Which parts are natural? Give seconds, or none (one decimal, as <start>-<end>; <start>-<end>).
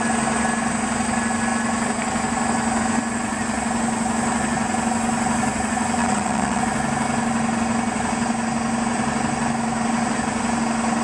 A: 0.0-6.0; 6.6-11.0